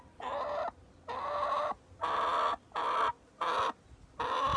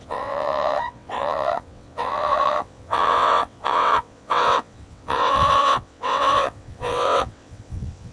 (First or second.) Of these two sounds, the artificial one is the second